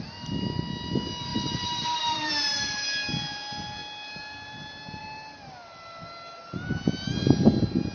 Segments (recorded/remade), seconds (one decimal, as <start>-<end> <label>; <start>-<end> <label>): 0.0-1.3 recorded; 1.3-2.3 remade; 2.3-7.9 recorded